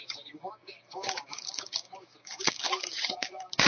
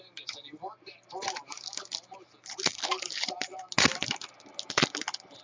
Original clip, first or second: second